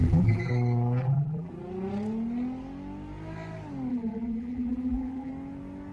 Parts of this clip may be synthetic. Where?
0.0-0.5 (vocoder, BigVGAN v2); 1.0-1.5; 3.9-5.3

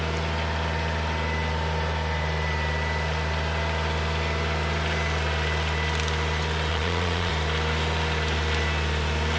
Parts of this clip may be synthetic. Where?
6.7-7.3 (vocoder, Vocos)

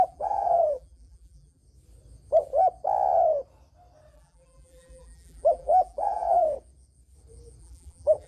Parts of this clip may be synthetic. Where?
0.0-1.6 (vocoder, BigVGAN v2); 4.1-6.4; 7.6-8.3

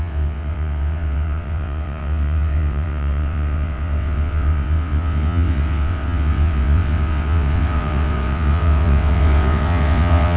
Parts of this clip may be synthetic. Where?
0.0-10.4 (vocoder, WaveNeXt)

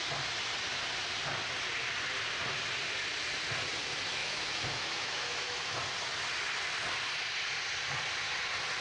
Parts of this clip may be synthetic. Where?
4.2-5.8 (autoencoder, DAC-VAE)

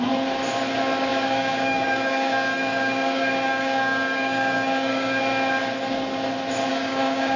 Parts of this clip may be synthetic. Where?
1.1-5.2 (codec, DAC); 6.7-7.4

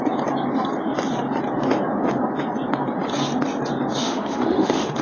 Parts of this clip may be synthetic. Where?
4.0-5.0 (autoencoder, DAC-VAE)